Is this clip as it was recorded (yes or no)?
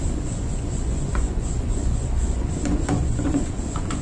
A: no